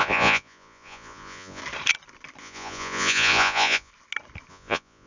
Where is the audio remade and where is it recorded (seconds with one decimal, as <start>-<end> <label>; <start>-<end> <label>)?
0.0-1.6 remade; 1.6-2.4 recorded; 2.4-3.9 remade; 3.9-4.5 recorded; 4.5-5.1 remade